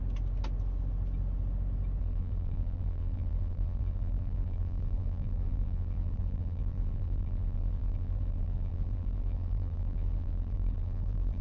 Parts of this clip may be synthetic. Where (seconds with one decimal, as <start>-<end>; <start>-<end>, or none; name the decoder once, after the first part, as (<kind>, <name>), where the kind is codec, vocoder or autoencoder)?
2.0-11.4 (vocoder, BigVGAN v2)